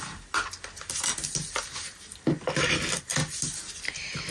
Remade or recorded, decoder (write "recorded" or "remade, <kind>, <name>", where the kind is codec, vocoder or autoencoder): recorded